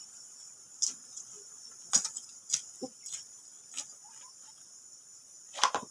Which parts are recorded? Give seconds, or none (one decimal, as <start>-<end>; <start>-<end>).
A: 0.0-5.9